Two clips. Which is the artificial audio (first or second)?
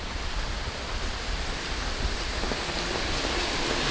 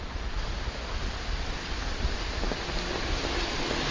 first